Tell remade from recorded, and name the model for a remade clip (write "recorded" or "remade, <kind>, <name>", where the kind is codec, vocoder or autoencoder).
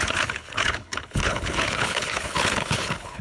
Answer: remade, codec, HILCodec